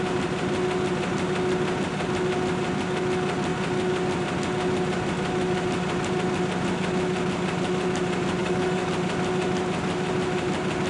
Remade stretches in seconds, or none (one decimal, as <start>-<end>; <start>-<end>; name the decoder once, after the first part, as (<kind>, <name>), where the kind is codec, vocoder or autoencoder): 8.4-8.9 (codec, DAC)